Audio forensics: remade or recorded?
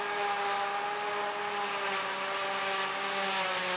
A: recorded